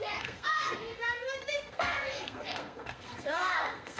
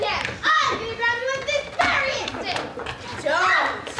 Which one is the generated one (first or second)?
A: first